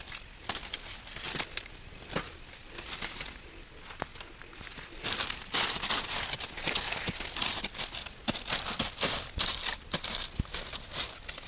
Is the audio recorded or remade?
recorded